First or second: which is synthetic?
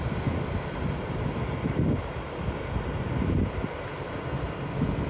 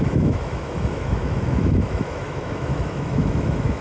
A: second